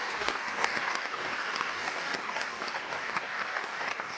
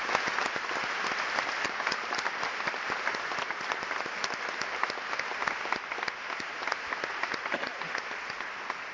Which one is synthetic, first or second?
first